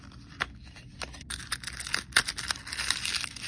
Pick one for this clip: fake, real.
real